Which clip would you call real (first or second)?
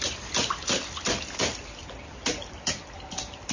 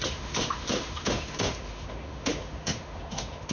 first